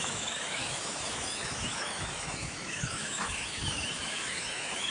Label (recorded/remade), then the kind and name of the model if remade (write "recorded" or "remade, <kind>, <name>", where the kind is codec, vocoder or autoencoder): remade, autoencoder, DAC-VAE